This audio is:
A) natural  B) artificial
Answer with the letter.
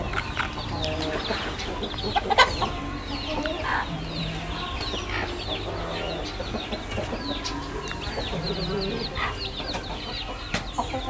A